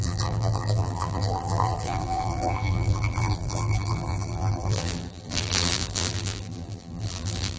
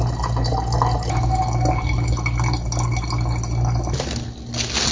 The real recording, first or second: second